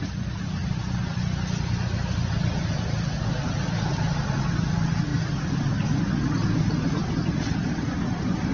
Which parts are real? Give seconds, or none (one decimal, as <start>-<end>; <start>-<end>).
0.0-0.6; 2.3-5.1; 6.7-8.5